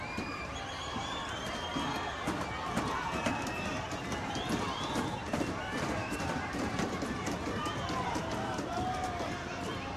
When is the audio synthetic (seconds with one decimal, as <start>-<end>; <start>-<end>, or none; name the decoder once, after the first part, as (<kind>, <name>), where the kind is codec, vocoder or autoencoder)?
0.0-1.7 (vocoder, BigVGAN v2); 4.7-10.0